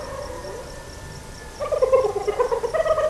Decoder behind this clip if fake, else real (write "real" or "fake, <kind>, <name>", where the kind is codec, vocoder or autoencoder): real